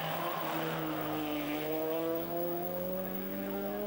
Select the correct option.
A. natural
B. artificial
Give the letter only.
B